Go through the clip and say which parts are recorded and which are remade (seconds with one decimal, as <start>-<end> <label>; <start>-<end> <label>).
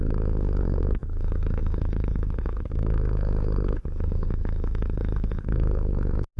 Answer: 0.0-6.4 remade